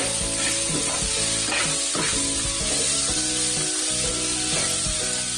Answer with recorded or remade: recorded